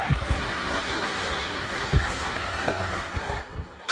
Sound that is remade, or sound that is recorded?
remade